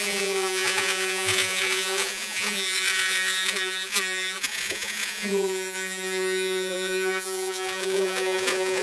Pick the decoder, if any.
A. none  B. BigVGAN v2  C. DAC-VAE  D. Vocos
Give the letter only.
D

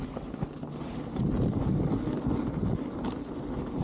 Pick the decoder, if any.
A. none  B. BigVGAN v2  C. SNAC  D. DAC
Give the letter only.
A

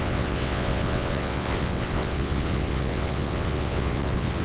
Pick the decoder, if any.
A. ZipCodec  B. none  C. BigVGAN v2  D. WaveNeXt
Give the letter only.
D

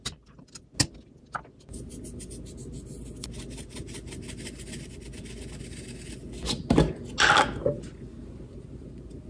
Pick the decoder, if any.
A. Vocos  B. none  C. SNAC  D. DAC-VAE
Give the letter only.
B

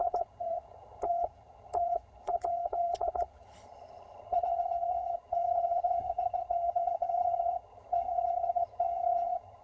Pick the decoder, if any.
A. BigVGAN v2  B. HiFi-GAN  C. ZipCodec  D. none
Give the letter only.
B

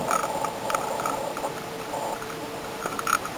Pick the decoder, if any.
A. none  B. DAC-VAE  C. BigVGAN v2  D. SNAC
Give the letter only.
C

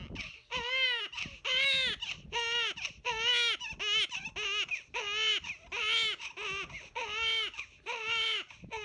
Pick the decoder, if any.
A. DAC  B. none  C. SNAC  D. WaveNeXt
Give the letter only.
B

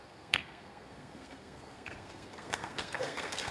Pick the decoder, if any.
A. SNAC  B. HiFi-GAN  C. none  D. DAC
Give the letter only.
A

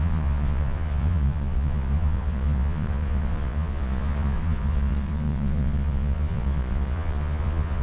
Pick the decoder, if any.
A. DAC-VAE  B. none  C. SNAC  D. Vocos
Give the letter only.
D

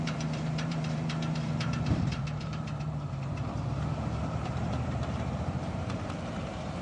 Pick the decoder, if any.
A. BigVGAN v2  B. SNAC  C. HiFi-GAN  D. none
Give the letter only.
A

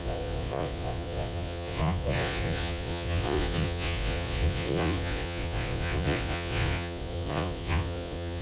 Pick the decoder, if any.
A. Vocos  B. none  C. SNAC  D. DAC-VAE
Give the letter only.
A